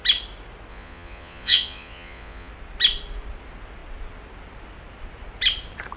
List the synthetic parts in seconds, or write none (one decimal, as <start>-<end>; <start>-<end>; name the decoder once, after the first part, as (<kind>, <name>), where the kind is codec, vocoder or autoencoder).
0.7-2.5 (vocoder, Vocos)